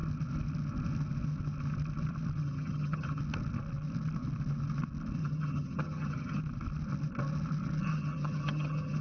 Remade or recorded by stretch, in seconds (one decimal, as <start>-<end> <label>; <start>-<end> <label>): 0.0-2.4 recorded; 2.4-3.2 remade; 3.2-5.2 recorded; 5.2-6.4 remade; 6.4-7.9 recorded; 7.9-9.0 remade